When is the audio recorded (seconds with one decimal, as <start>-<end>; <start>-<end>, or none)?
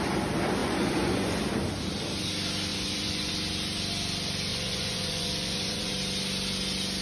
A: 0.0-0.6; 1.4-2.7; 3.3-4.5; 5.9-7.0